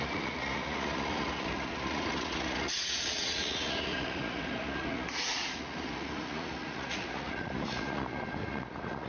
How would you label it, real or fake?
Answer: fake